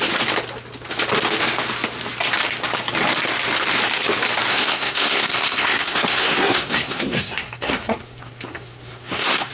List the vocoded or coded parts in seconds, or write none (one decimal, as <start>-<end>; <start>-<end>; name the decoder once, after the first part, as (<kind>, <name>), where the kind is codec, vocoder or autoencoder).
4.5-9.5 (codec, SNAC)